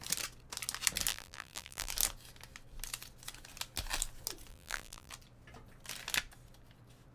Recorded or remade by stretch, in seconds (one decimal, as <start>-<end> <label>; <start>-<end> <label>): 0.0-1.1 recorded; 1.1-1.9 remade; 1.9-4.5 recorded; 4.5-5.1 remade; 5.1-7.1 recorded